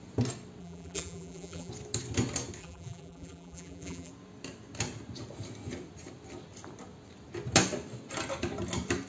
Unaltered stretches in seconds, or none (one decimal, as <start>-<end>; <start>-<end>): 0.0-0.6; 1.7-2.6; 4.1-9.1

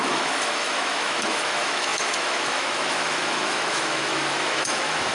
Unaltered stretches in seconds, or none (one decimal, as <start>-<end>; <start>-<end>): none

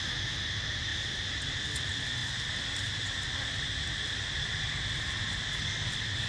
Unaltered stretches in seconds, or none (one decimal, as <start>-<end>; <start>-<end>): 0.0-6.3

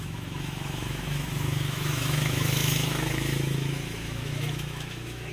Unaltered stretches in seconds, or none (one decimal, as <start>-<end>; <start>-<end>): none